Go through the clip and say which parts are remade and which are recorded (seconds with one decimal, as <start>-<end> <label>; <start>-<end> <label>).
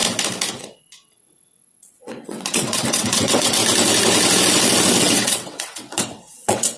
0.0-0.5 recorded; 0.5-3.6 remade; 3.6-5.0 recorded; 5.0-6.8 remade